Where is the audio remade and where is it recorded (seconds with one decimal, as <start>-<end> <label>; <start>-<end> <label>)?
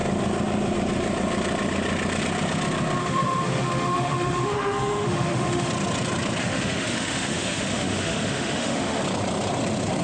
0.0-3.0 recorded; 3.0-5.7 remade; 5.7-6.4 recorded; 6.4-9.0 remade; 9.0-10.0 recorded